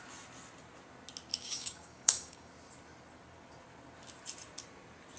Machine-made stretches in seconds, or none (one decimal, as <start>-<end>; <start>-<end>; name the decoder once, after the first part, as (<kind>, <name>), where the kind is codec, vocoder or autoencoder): 1.3-2.5 (codec, DAC)